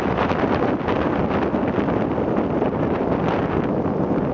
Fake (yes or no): no